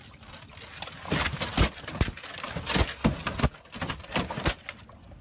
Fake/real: real